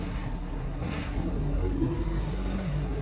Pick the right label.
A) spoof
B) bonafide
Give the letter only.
A